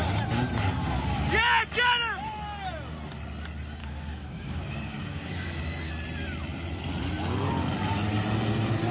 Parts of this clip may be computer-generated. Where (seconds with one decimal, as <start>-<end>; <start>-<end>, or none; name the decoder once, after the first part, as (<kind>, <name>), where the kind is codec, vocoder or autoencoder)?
3.8-5.9 (codec, DAC)